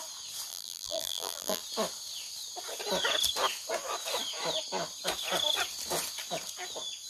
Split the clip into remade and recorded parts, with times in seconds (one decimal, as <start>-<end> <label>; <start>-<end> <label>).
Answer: 0.0-0.5 recorded; 0.5-1.6 remade; 1.6-7.1 recorded

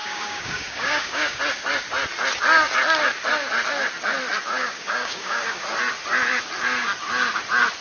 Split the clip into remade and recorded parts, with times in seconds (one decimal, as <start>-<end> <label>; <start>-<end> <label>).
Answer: 0.0-1.4 remade; 1.4-4.6 recorded; 4.6-5.6 remade; 5.6-7.8 recorded

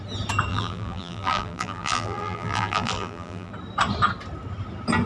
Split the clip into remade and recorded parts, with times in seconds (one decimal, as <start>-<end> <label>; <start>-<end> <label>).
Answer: 0.0-0.5 recorded; 0.5-3.5 remade; 3.5-5.1 recorded

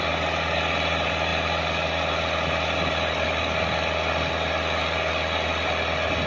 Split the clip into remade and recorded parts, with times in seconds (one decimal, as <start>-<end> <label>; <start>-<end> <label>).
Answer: 0.0-6.3 recorded

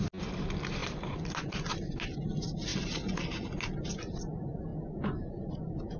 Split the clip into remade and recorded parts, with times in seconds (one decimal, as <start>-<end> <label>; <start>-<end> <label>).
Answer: 0.0-6.0 recorded

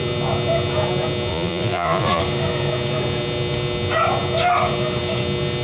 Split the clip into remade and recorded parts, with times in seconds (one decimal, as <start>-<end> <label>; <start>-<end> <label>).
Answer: 0.0-1.3 recorded; 1.3-2.2 remade; 2.2-5.6 recorded